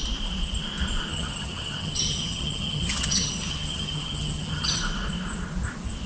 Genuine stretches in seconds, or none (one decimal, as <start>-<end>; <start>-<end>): 0.0-1.1; 4.8-6.1